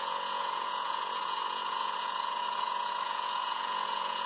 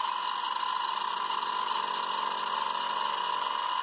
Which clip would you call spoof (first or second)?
first